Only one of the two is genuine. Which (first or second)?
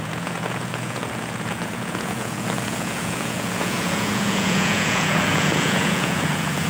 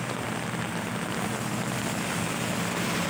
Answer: second